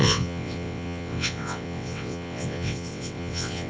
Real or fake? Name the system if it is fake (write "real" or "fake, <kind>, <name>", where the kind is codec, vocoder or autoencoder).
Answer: fake, vocoder, WaveNeXt